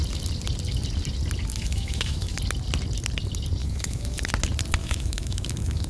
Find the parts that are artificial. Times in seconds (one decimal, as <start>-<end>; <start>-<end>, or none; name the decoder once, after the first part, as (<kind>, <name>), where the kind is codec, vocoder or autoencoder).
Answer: 1.5-2.4 (autoencoder, DAC-VAE); 3.6-4.3; 4.8-5.9